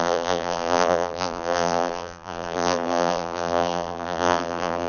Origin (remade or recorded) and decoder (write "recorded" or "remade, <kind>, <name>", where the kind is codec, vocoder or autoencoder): remade, vocoder, BigVGAN v2